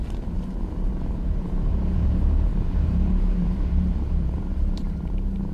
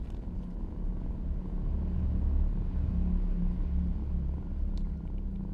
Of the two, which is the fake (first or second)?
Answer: first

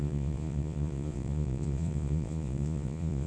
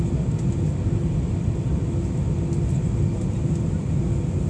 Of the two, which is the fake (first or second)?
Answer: first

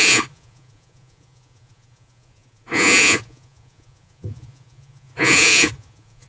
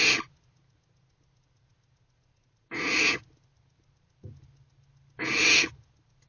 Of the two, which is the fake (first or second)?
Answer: first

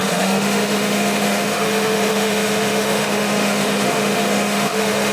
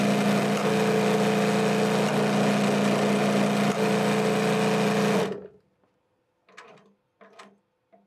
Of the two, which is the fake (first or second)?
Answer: first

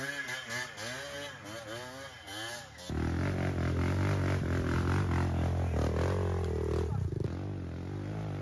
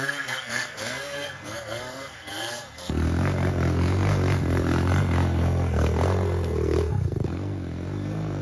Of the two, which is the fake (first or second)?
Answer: second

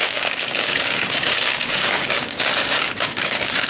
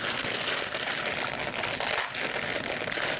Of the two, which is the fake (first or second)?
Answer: first